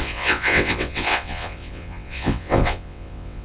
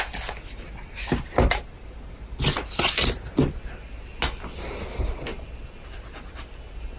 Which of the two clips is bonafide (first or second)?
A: second